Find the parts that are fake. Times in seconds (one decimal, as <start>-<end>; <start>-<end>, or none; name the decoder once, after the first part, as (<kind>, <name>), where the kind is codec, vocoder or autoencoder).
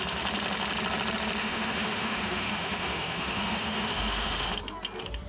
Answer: 1.4-4.5 (autoencoder, DAC-VAE)